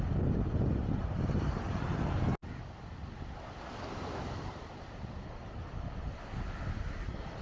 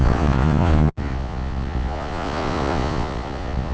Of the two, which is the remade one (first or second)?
second